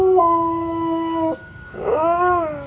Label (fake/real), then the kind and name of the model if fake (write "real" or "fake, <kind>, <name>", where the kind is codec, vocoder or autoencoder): fake, codec, DAC